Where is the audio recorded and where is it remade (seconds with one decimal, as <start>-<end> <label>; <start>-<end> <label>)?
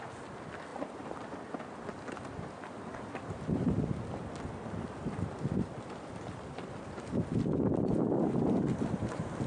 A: 0.0-9.5 recorded